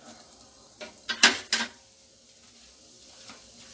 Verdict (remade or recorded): recorded